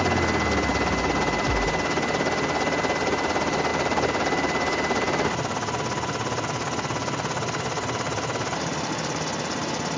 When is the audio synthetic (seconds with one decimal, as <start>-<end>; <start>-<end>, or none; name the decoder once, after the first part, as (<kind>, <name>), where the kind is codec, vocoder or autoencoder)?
3.7-8.9 (vocoder, BigVGAN v2)